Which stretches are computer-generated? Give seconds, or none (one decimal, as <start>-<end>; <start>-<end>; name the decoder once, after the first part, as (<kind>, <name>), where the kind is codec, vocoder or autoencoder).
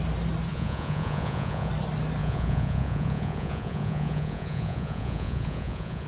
0.5-1.7 (vocoder, Vocos); 2.2-6.1